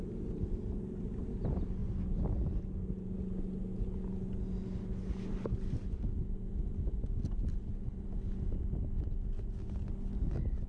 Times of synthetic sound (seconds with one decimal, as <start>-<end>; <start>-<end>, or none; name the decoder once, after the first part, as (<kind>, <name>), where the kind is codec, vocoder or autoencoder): 1.8-2.6 (vocoder, BigVGAN v2)